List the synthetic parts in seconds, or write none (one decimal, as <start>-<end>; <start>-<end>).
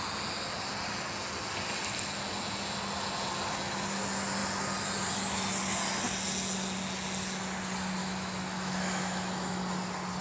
8.0-9.6